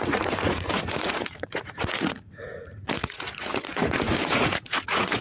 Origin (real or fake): fake